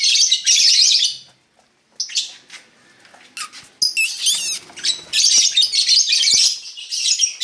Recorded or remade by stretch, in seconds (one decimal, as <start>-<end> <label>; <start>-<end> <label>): 0.0-7.4 recorded